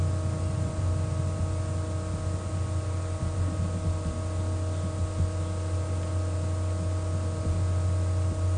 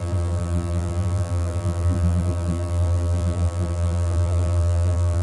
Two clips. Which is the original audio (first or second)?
first